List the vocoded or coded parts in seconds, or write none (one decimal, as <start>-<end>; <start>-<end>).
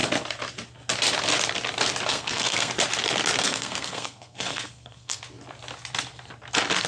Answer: 2.1-2.7; 3.4-5.2